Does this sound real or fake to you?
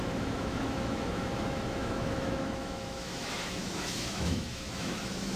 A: fake